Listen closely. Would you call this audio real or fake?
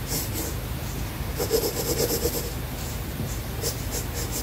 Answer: fake